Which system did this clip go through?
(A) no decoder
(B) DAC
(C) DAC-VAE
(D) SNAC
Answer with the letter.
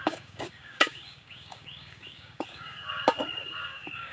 B